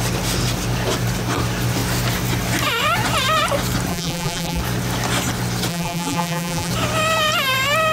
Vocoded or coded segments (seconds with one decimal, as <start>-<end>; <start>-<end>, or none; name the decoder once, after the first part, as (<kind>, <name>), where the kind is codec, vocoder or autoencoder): 3.9-4.6 (vocoder, BigVGAN v2); 5.7-6.7